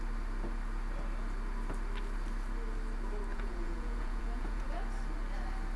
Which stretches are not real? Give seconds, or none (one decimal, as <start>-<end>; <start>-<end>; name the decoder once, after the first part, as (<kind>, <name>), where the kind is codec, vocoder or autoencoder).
3.3-4.7 (vocoder, Vocos)